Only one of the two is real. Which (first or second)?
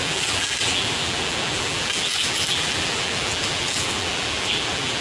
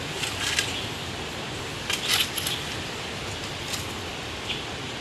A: second